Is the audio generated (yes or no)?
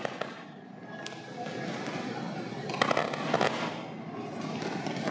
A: no